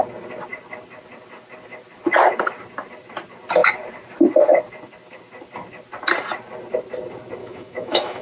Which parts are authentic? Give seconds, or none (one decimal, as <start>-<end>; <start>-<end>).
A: 0.0-7.4